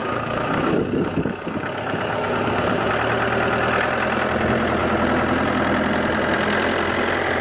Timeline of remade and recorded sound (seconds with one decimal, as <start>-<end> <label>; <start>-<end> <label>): 0.0-2.9 remade; 2.9-7.4 recorded

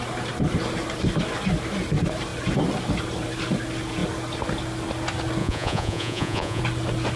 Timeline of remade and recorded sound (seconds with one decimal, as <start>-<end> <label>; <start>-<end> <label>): 0.0-5.4 recorded; 5.4-6.6 remade; 6.6-7.2 recorded